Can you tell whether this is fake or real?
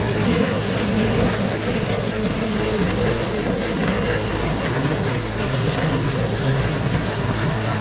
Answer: fake